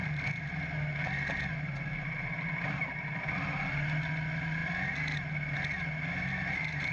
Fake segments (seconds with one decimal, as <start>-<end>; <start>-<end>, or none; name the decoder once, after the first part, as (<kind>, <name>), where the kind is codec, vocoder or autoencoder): none